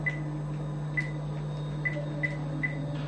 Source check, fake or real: real